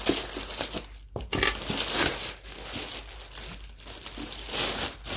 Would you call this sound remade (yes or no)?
no